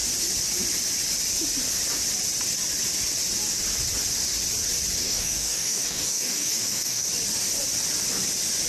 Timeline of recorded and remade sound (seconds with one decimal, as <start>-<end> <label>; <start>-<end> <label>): 0.0-5.0 recorded; 5.0-7.1 remade; 7.1-8.7 recorded